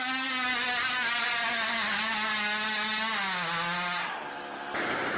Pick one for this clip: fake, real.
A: real